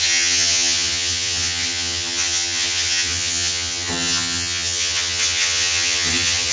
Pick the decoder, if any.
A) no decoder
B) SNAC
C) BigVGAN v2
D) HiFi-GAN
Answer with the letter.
D